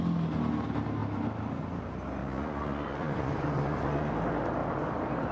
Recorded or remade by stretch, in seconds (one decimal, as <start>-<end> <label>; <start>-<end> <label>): 0.0-2.2 recorded; 2.2-4.1 remade; 4.1-5.3 recorded